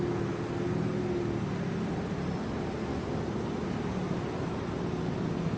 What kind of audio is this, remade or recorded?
recorded